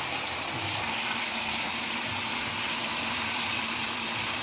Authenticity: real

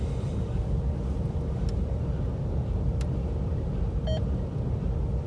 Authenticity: real